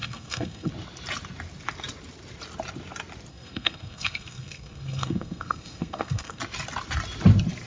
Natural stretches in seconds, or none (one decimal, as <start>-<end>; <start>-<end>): 0.7-3.3; 6.4-7.7